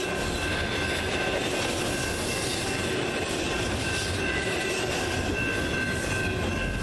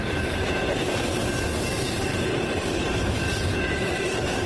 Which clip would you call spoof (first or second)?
second